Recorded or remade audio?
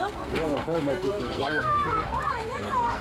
remade